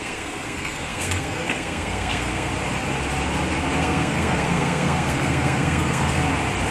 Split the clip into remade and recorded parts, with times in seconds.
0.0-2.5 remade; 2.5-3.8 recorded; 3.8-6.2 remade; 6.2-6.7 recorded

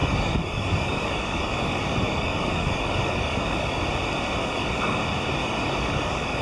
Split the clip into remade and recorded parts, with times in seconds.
0.0-3.8 remade; 3.8-4.4 recorded; 4.4-5.0 remade; 5.0-5.4 recorded; 5.4-6.4 remade

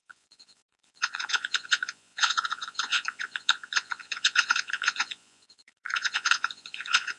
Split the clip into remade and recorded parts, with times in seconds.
0.0-7.2 remade

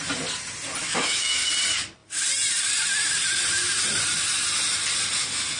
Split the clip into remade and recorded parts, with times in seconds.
0.0-0.8 recorded; 0.8-1.5 remade; 1.5-5.6 recorded

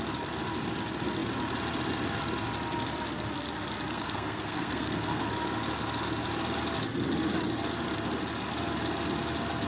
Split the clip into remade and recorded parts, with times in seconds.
0.0-3.9 recorded; 3.9-5.3 remade; 5.3-9.7 recorded

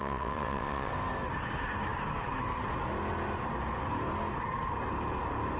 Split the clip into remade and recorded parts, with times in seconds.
0.0-0.9 remade; 0.9-5.6 recorded

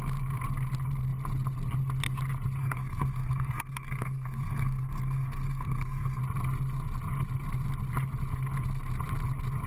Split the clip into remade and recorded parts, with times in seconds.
0.0-2.6 recorded; 2.6-6.2 remade; 6.2-9.7 recorded